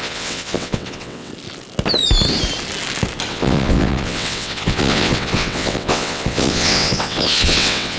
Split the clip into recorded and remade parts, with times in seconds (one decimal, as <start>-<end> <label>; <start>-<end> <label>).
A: 0.0-1.3 remade; 1.3-3.3 recorded; 3.3-8.0 remade